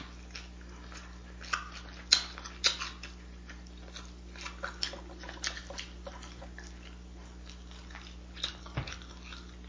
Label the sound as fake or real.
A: real